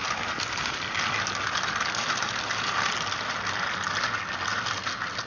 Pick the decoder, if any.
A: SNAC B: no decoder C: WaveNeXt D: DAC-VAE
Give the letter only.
B